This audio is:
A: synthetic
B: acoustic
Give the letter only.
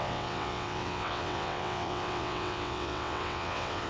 A